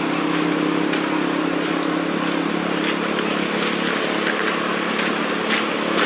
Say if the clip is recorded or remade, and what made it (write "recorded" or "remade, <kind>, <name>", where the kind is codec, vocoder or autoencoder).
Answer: recorded